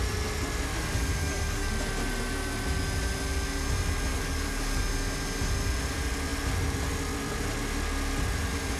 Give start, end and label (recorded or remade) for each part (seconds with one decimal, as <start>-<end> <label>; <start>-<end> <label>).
0.0-1.2 recorded; 1.2-1.7 remade; 1.7-4.1 recorded; 4.1-4.8 remade; 4.8-8.8 recorded

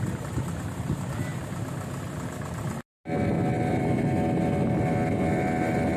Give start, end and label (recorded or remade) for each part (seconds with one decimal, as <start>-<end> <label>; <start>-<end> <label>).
0.0-6.0 recorded